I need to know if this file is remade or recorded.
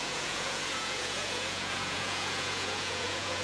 remade